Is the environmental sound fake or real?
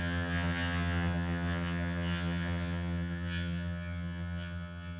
fake